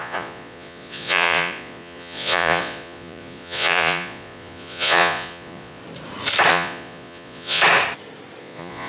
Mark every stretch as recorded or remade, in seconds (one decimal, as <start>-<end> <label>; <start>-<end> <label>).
0.0-5.8 remade; 5.8-6.5 recorded; 6.5-7.6 remade; 7.6-8.4 recorded; 8.4-8.9 remade